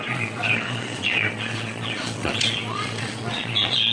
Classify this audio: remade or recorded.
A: remade